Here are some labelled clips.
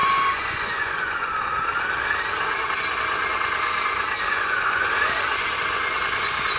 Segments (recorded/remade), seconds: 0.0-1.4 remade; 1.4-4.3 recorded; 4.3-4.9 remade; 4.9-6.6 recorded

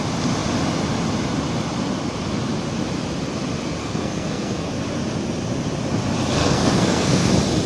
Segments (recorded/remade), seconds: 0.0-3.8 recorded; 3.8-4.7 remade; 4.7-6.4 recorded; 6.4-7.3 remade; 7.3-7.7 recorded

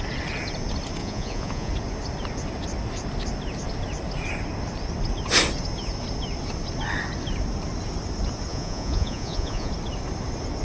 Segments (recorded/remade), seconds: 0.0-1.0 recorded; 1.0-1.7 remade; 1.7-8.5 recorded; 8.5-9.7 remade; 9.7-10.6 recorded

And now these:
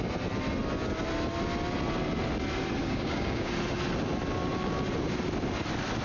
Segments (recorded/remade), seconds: 0.0-2.8 recorded; 2.8-3.5 remade; 3.5-6.0 recorded

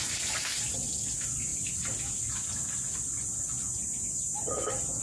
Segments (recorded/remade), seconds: 0.0-5.0 recorded

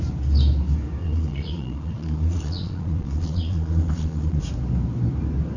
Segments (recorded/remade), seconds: 0.0-1.0 recorded; 1.0-4.4 remade; 4.4-5.6 recorded

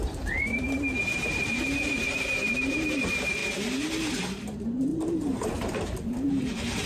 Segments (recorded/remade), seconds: 0.0-1.1 remade; 1.1-2.6 recorded; 2.6-3.4 remade; 3.4-4.1 recorded; 4.1-6.9 remade